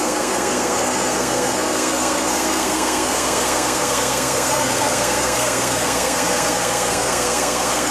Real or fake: fake